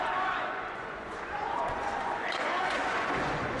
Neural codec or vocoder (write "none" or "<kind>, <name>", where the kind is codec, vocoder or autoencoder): vocoder, Vocos